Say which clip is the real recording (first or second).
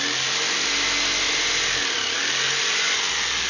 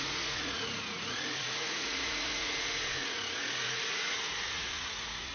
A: first